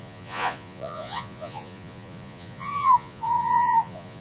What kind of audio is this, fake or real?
fake